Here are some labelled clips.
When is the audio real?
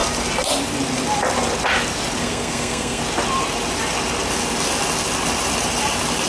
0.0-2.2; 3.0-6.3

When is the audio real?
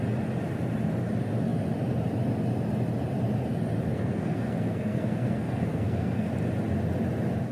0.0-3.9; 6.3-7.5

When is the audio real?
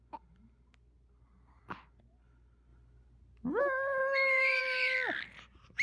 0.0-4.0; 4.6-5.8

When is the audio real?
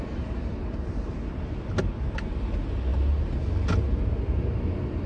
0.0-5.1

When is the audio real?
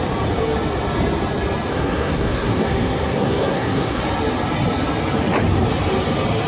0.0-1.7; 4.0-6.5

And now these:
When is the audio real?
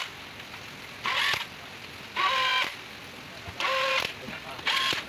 0.0-5.1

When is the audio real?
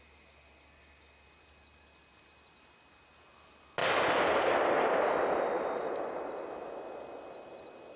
0.0-8.0